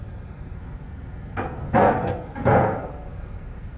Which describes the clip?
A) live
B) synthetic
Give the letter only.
B